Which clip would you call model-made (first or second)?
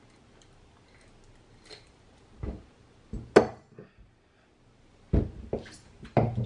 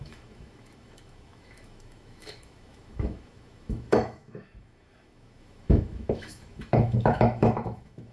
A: second